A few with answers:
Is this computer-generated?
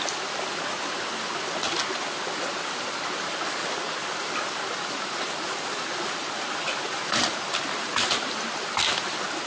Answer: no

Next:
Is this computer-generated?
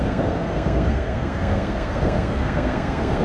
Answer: yes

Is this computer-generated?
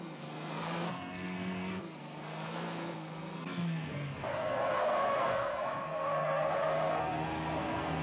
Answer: yes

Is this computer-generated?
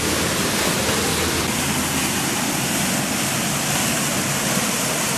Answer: no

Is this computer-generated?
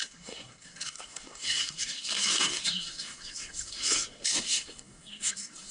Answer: yes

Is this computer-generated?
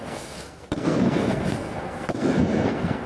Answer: yes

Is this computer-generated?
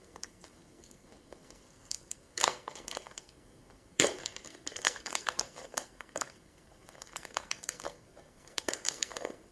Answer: yes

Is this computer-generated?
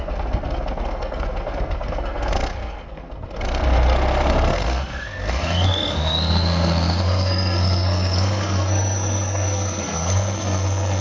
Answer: yes